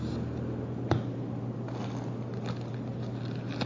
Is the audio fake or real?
real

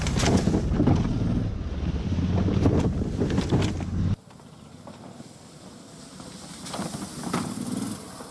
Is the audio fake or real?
real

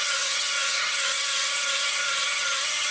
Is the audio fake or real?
fake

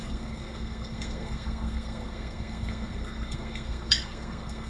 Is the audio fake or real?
fake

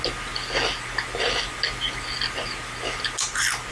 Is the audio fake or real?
real